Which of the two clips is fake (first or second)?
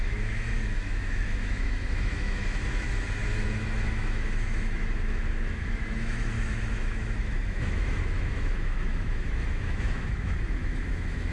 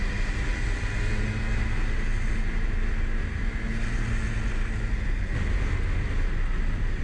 first